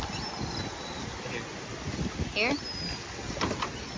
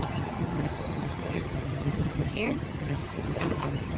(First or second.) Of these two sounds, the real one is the first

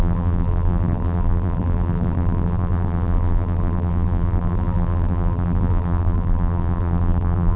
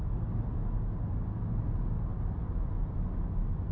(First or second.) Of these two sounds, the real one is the second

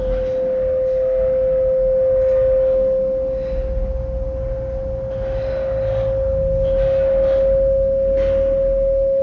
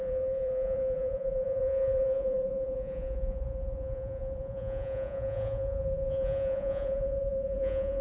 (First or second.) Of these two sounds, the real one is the first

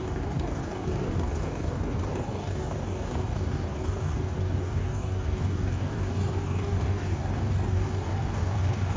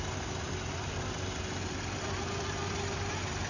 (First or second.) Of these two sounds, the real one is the second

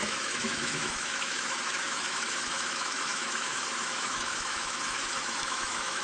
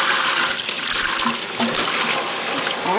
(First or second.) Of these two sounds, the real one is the second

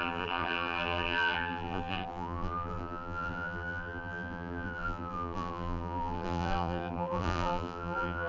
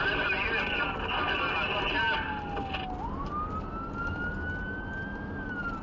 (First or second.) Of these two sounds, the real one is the second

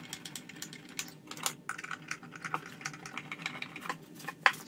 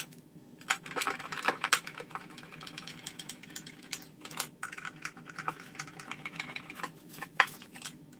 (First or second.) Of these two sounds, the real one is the first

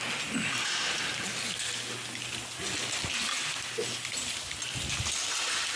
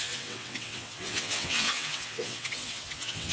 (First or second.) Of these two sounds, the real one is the first